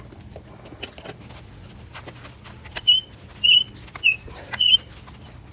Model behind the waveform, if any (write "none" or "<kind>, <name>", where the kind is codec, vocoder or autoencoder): none